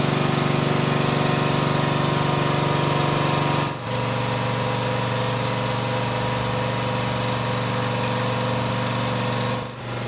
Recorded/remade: recorded